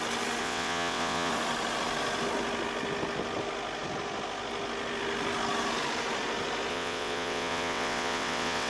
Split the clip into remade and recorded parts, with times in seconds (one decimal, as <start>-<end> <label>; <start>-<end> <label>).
0.0-0.4 recorded; 0.4-1.3 remade; 1.3-6.7 recorded; 6.7-8.7 remade